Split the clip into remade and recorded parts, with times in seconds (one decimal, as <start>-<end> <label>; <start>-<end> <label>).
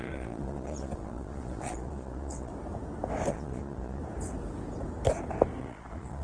0.0-2.5 remade; 2.5-3.3 recorded; 3.3-4.0 remade; 4.0-5.6 recorded; 5.6-6.2 remade